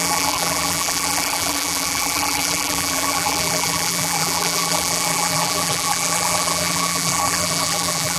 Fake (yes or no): yes